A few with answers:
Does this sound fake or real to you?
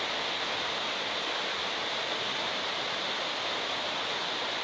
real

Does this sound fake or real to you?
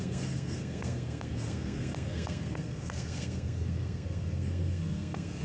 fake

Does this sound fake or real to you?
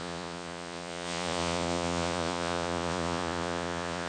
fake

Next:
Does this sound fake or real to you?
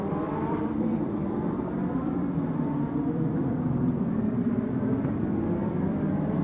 fake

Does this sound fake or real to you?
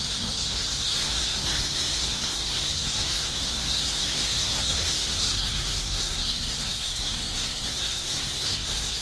fake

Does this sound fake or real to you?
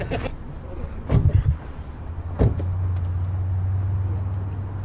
real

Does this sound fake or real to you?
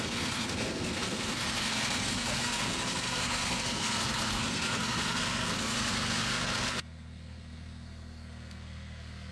fake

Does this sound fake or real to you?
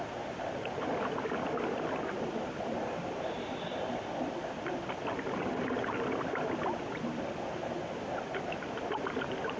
real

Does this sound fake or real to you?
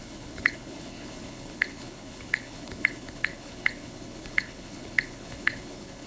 fake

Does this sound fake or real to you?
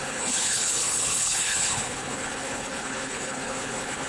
fake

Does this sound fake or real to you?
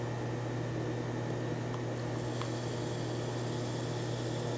real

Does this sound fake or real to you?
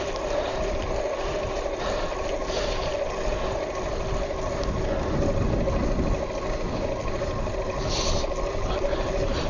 real